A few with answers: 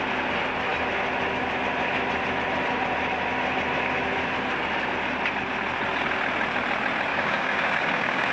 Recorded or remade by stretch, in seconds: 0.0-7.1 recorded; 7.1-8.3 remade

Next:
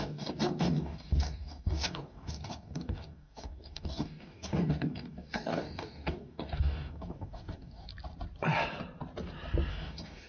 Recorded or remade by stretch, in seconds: 0.0-7.9 remade; 7.9-9.7 recorded; 9.7-10.3 remade

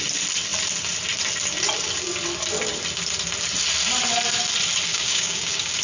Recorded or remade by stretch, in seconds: 0.0-4.9 recorded; 4.9-5.8 remade

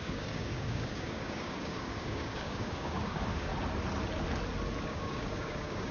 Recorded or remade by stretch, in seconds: 0.0-3.5 remade; 3.5-4.8 recorded; 4.8-5.9 remade

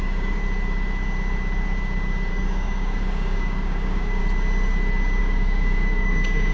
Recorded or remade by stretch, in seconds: 0.0-0.4 remade; 0.4-2.3 recorded; 2.3-4.2 remade; 4.2-5.2 recorded; 5.2-6.5 remade

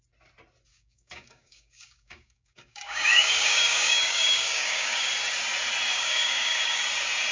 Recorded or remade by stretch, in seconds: 0.0-0.7 recorded; 0.7-5.1 remade; 5.1-5.9 recorded; 5.9-6.8 remade; 6.8-7.3 recorded

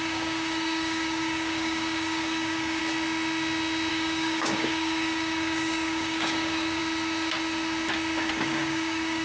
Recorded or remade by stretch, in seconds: 0.0-2.8 remade; 2.8-3.9 recorded; 3.9-6.8 remade; 6.8-8.3 recorded; 8.3-9.2 remade